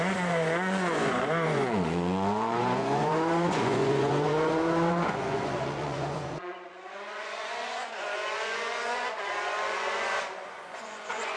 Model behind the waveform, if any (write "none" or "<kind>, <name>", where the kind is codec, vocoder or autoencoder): vocoder, Vocos